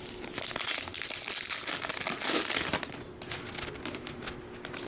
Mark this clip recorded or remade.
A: recorded